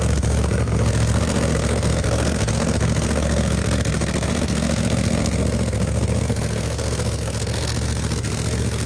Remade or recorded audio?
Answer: remade